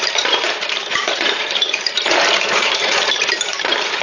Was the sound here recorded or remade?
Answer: remade